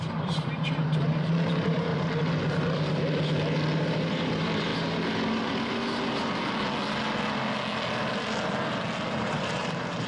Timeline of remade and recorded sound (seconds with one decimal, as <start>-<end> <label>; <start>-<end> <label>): 0.0-1.9 remade; 1.9-3.8 recorded; 3.8-4.7 remade; 4.7-9.1 recorded; 9.1-10.1 remade